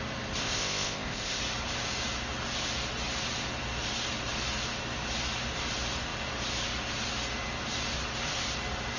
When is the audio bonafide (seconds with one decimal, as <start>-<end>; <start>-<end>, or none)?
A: 0.0-0.4; 1.4-9.0